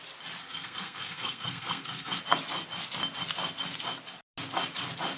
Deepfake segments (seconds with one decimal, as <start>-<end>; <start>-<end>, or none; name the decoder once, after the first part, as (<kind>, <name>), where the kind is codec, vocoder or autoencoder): 0.4-2.2 (codec, SNAC)